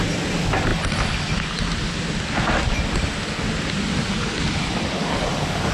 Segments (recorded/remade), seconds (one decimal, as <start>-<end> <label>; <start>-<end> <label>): 0.0-5.0 recorded; 5.0-5.7 remade